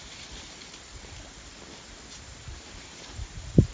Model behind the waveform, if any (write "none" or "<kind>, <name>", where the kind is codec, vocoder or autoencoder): none